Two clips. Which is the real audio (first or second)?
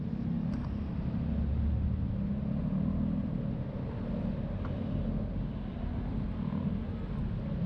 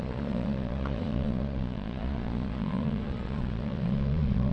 first